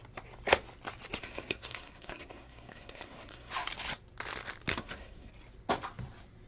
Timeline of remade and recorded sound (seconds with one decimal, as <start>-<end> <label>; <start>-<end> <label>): 0.0-1.2 recorded; 1.2-3.5 remade; 3.5-4.7 recorded; 4.7-5.3 remade; 5.3-6.5 recorded